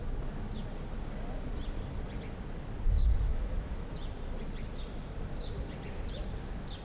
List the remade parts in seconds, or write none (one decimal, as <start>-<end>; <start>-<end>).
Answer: 3.3-3.9